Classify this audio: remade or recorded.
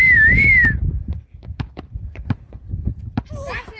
remade